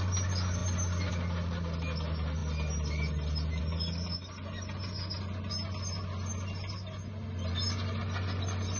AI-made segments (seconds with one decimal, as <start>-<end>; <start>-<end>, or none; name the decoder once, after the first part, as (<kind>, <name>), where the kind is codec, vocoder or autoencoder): none